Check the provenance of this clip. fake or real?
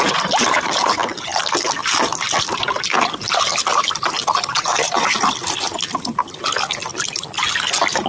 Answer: real